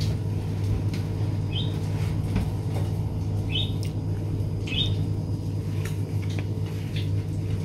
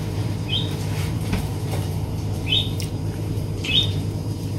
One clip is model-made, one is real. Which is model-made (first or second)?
second